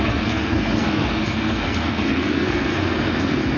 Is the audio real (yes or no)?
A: no